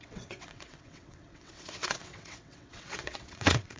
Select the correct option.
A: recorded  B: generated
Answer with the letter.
B